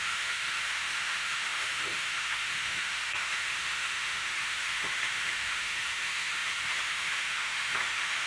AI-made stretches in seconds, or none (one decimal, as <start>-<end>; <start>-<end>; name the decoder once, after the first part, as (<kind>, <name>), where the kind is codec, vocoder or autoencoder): 0.0-8.3 (autoencoder, DAC-VAE)

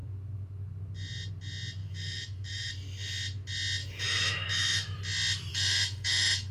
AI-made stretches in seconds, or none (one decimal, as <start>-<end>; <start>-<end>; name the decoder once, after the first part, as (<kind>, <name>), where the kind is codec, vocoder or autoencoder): 1.8-2.7 (autoencoder, DAC-VAE); 3.8-5.0; 5.5-6.5

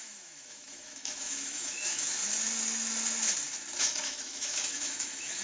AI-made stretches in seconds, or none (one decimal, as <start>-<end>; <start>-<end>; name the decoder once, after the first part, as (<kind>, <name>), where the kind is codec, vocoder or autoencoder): 0.0-2.2 (autoencoder, DAC-VAE); 3.8-5.4

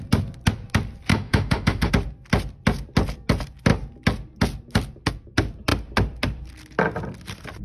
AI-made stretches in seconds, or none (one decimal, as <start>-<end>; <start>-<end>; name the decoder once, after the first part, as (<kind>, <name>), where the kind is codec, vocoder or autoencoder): 1.1-1.9 (autoencoder, DAC-VAE)

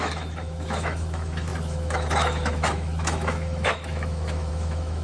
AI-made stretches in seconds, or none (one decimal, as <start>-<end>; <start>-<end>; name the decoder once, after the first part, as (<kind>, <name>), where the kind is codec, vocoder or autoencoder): 0.0-5.0 (autoencoder, DAC-VAE)

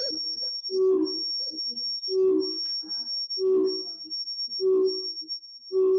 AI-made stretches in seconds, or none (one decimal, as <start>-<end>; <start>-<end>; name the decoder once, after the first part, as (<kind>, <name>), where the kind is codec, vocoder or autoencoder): none

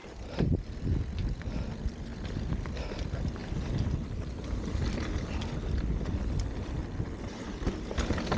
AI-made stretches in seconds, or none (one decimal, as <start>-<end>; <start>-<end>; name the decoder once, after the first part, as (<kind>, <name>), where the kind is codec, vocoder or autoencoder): none